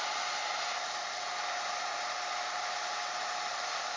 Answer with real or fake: real